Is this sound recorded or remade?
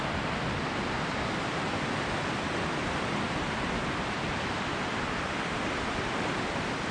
recorded